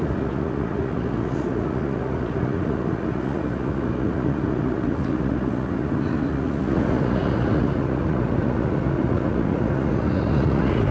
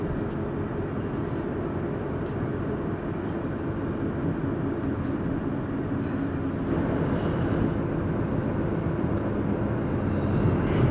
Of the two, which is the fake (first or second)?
first